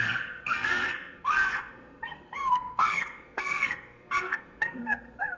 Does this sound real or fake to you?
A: fake